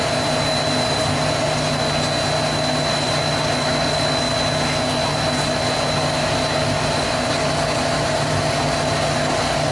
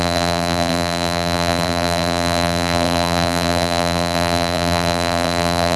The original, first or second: first